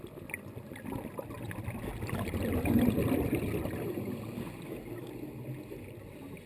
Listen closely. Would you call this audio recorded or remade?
recorded